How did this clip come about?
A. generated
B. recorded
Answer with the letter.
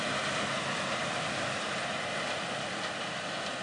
B